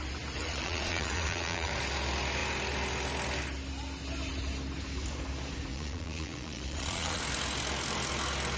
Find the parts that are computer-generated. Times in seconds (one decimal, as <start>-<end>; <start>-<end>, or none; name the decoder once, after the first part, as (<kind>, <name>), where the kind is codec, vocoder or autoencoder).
0.4-1.7 (vocoder, Vocos); 5.7-7.2